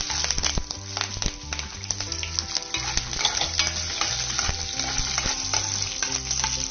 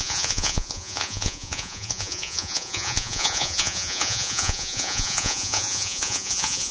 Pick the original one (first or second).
first